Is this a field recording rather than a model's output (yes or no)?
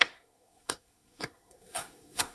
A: no